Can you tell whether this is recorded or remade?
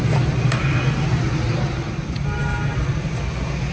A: recorded